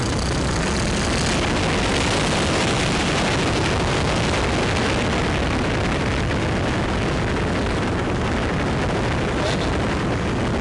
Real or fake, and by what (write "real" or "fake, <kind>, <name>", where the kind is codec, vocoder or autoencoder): real